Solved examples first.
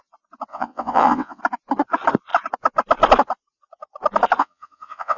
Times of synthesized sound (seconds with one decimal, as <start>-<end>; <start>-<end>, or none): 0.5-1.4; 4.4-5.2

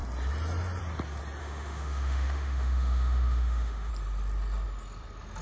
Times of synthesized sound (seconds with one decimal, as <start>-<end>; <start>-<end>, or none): 1.4-3.9

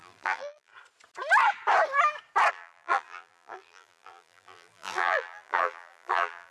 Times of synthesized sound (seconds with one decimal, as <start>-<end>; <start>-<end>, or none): 0.0-0.7; 2.5-6.5